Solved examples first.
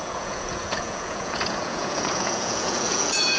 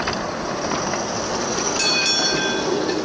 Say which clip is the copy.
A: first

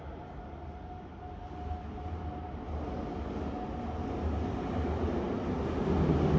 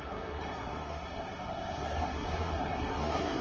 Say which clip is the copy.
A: second